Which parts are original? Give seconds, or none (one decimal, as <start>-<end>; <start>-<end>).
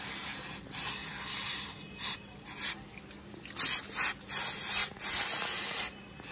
0.0-6.3